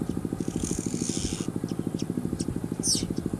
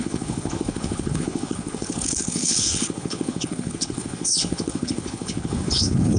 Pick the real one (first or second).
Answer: first